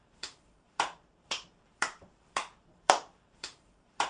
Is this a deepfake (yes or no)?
yes